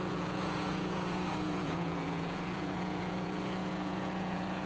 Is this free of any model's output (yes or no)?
no